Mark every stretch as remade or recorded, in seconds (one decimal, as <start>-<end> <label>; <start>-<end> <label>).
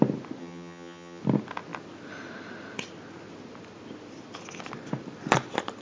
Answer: 0.0-0.4 recorded; 0.4-1.2 remade; 1.2-5.8 recorded